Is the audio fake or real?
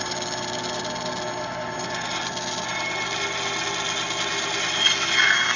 real